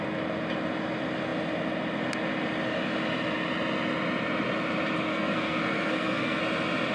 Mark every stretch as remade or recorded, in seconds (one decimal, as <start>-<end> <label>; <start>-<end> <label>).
0.0-5.1 recorded; 5.1-6.4 remade; 6.4-6.9 recorded